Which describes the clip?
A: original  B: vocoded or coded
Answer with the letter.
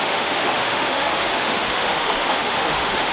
B